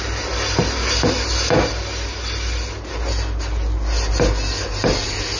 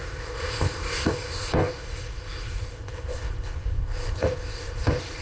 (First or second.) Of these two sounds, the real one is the first